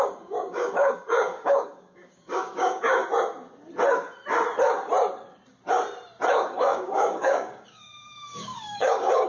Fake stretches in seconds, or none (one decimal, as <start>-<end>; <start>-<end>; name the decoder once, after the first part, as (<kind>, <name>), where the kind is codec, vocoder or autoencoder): 0.0-3.0 (codec, DAC); 6.3-9.3